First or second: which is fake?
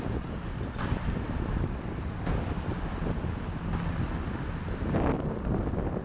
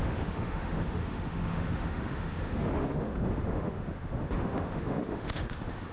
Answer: second